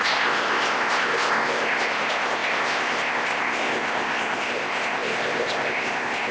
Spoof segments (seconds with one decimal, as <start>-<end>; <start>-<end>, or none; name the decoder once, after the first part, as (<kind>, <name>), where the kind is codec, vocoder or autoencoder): 0.0-6.3 (codec, ZipCodec)